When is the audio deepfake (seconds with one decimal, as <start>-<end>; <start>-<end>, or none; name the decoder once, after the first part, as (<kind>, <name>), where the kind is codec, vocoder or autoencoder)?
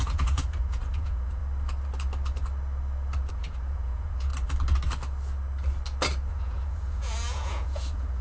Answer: 0.0-1.4 (vocoder, Vocos); 3.3-4.3; 6.3-8.2